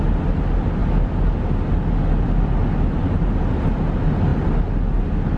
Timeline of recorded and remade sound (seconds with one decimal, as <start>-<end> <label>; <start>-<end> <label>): 0.0-5.4 recorded